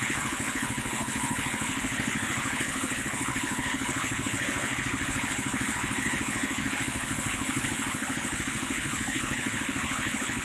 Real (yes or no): no